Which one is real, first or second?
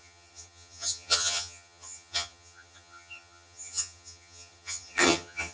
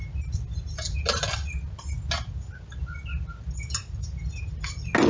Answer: second